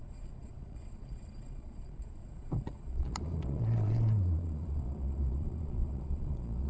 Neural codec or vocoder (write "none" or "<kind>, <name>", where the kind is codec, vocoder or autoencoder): vocoder, Vocos